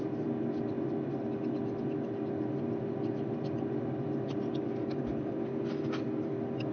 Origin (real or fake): real